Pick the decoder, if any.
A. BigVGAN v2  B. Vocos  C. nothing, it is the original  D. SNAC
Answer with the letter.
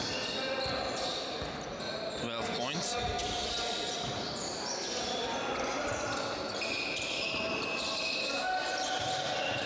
C